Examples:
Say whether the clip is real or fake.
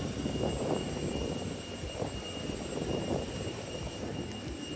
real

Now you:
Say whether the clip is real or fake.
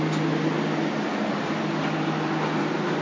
real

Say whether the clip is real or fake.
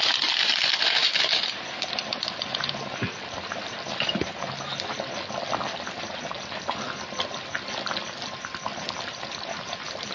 real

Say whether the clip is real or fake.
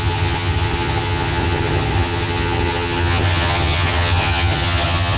fake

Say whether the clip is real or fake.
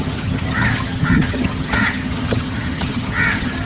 fake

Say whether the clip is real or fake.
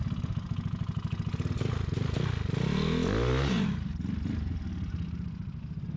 real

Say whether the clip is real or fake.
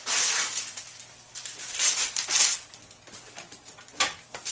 real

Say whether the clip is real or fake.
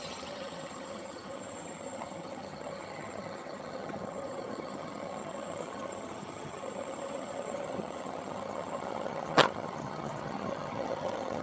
fake